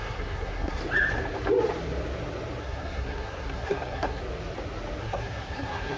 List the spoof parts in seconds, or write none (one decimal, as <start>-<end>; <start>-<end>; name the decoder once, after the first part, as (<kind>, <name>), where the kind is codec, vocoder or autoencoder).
0.0-0.8 (codec, SNAC); 2.6-4.2; 5.0-6.0